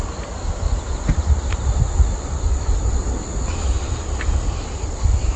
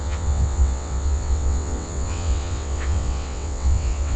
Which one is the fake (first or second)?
second